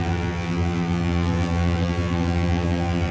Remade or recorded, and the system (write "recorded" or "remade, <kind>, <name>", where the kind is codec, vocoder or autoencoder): remade, vocoder, BigVGAN v2